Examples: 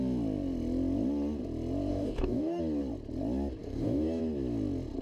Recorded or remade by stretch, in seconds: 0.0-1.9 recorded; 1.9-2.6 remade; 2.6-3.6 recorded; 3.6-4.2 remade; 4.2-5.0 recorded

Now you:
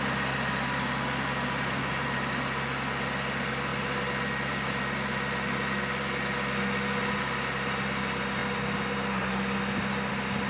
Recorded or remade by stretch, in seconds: 0.0-10.5 recorded

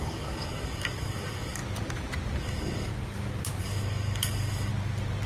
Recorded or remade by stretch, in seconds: 0.0-1.6 remade; 1.6-2.4 recorded; 2.4-2.9 remade; 2.9-3.6 recorded; 3.6-4.7 remade; 4.7-5.3 recorded

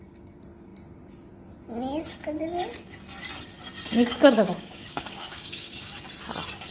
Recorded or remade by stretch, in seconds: 0.0-4.1 recorded; 4.1-5.9 remade; 5.9-6.7 recorded